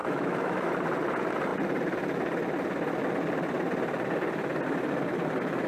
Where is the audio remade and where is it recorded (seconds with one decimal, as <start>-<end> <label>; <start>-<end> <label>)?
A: 0.0-0.7 remade; 0.7-5.7 recorded